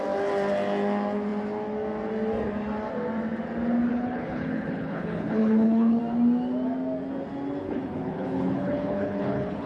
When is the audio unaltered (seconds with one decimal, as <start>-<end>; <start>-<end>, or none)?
0.0-3.9; 6.0-7.6